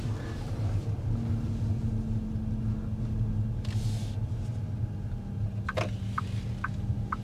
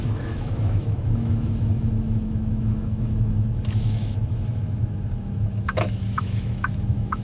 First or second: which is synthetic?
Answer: second